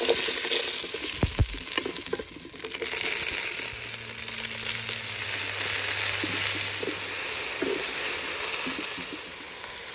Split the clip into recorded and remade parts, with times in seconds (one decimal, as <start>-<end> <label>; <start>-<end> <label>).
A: 0.0-9.9 recorded